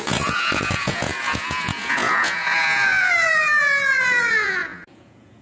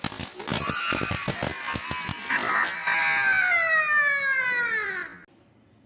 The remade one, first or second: first